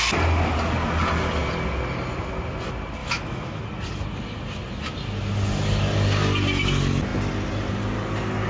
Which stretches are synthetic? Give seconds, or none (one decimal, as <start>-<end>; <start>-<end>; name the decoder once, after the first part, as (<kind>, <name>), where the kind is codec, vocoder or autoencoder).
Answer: 3.0-3.6 (autoencoder, DAC-VAE)